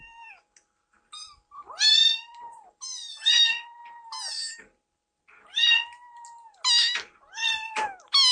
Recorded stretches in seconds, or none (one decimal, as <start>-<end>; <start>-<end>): 0.0-8.3